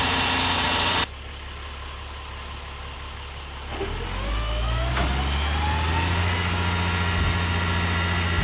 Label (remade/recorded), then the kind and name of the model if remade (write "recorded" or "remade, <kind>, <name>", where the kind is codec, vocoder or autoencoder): recorded